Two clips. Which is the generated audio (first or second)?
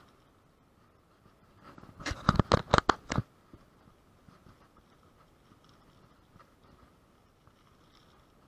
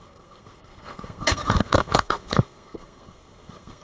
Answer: second